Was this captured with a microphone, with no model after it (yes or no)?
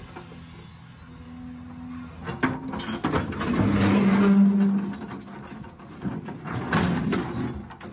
yes